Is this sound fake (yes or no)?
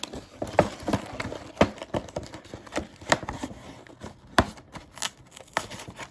no